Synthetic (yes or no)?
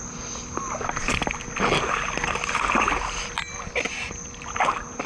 no